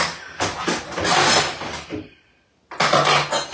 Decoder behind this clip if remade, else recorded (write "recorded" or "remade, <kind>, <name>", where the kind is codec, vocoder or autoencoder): recorded